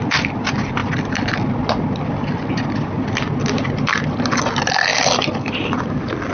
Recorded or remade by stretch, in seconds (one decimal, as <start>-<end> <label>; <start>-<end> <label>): 0.0-6.3 remade